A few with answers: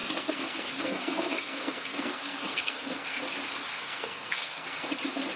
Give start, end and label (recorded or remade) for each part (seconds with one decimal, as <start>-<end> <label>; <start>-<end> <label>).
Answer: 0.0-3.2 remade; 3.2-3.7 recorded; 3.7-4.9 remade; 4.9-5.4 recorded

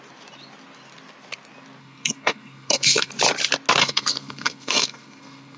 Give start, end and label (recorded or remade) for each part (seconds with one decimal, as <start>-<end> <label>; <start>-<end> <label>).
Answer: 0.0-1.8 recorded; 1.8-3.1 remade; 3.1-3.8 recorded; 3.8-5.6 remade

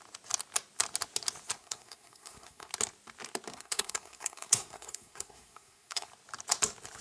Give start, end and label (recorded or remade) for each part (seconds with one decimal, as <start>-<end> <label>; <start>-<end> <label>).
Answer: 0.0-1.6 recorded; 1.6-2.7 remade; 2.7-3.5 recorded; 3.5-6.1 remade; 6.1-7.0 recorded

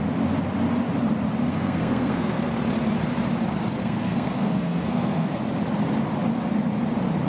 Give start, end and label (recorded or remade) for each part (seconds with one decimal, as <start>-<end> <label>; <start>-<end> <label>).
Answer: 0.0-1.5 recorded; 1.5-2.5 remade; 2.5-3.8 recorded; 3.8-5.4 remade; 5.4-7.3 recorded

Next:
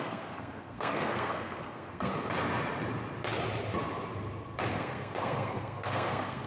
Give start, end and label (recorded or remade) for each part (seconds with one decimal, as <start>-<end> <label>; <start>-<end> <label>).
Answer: 0.0-2.1 remade; 2.1-4.7 recorded; 4.7-6.5 remade

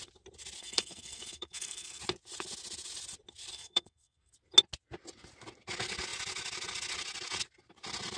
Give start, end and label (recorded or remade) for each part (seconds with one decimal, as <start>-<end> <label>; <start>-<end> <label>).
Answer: 0.0-0.6 recorded; 0.6-2.0 remade; 2.0-3.5 recorded; 3.5-4.3 remade; 4.3-8.2 recorded